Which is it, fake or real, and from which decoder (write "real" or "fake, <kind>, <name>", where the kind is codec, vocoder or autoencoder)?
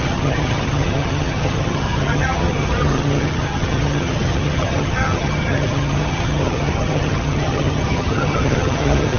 fake, vocoder, HiFi-GAN